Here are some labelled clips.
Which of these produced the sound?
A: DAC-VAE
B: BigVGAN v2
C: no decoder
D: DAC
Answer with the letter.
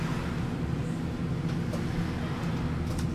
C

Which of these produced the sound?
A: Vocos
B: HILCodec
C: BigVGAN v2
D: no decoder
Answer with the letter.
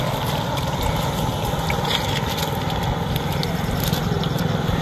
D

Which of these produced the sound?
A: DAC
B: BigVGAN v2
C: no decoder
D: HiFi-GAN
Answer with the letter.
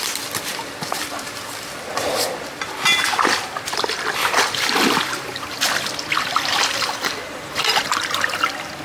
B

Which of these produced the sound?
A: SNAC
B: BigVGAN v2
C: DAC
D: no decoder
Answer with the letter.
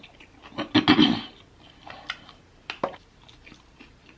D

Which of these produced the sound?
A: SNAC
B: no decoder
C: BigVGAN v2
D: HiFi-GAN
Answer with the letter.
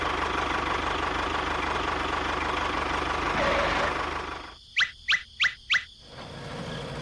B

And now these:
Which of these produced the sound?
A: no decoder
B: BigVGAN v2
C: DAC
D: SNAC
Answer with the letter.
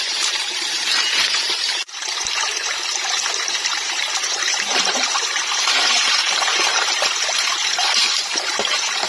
B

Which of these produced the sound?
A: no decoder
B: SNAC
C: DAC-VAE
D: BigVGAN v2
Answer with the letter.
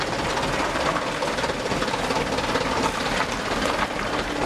A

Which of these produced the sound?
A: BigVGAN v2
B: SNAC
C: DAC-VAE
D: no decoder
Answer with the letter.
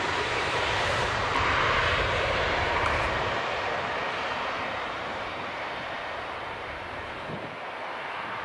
A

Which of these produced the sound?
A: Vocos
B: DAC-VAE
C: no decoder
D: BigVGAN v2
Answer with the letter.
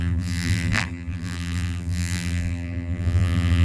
D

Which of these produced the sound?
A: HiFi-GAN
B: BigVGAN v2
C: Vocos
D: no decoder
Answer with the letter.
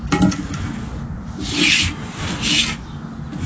D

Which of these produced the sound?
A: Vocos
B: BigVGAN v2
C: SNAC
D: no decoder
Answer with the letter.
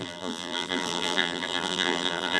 B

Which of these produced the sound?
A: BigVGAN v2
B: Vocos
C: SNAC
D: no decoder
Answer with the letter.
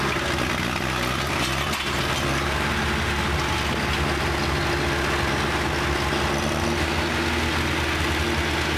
D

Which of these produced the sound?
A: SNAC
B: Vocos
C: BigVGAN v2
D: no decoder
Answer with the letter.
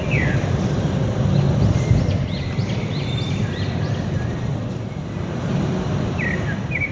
C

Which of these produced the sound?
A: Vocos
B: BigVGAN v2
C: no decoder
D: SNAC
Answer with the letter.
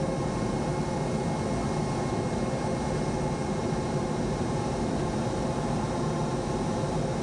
C